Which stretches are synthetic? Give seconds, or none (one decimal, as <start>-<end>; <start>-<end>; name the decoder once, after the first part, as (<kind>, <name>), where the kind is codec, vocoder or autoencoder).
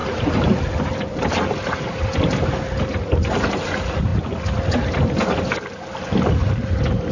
none